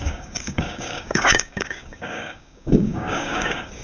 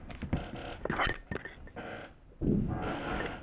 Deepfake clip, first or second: first